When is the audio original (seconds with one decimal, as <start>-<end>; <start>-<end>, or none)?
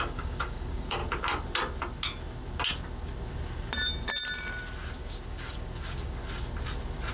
1.0-5.0; 6.2-7.1